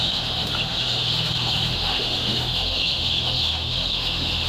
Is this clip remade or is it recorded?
remade